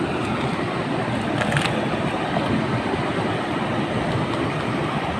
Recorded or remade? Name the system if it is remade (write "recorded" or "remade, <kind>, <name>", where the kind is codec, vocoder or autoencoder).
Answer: recorded